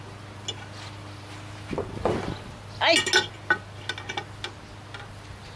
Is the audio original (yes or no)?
yes